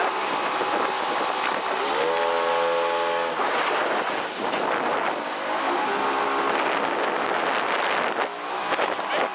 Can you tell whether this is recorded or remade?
recorded